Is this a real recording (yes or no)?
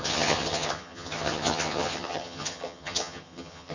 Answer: no